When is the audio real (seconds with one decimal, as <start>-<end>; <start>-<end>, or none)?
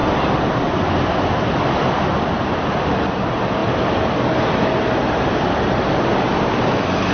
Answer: none